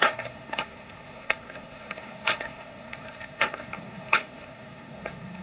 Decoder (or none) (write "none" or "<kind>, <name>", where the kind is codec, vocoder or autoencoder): codec, SNAC